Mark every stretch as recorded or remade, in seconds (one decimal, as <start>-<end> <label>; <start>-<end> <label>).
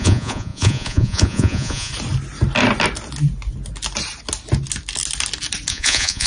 0.0-1.9 remade; 1.9-5.7 recorded; 5.7-6.3 remade